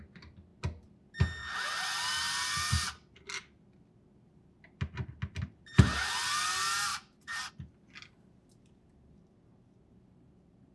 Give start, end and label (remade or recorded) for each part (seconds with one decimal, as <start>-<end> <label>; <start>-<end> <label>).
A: 0.0-6.9 recorded; 6.9-7.5 remade; 7.5-10.7 recorded

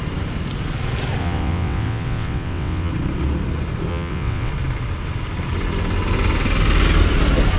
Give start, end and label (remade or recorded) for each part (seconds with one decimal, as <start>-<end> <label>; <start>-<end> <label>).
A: 0.0-1.2 recorded; 1.2-2.9 remade; 2.9-3.9 recorded; 3.9-4.5 remade; 4.5-7.6 recorded

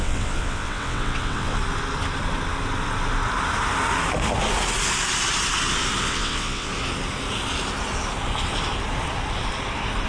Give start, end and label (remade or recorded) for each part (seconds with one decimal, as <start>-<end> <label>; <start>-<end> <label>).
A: 0.0-1.6 remade; 1.6-6.0 recorded; 6.0-6.7 remade; 6.7-10.1 recorded

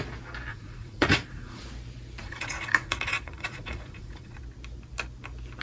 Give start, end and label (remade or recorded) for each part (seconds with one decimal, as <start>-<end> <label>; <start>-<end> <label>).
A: 0.0-0.5 recorded; 0.5-1.6 remade; 1.6-2.2 recorded; 2.2-4.4 remade; 4.4-5.6 recorded

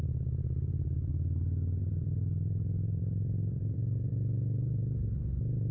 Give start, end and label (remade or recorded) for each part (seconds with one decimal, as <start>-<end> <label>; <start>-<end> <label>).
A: 0.0-1.1 remade; 1.1-1.8 recorded; 1.8-4.1 remade; 4.1-5.7 recorded

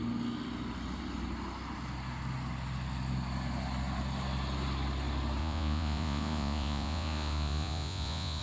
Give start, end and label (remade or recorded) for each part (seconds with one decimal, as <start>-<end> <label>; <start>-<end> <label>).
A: 0.0-5.4 recorded; 5.4-8.4 remade